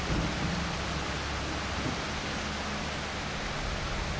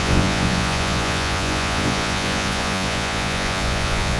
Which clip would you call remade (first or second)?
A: second